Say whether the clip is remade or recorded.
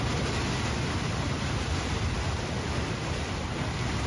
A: recorded